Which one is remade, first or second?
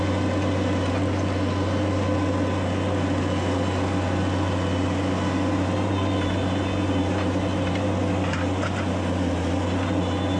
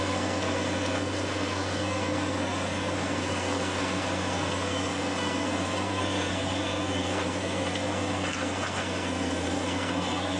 second